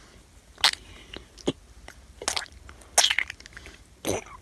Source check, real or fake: real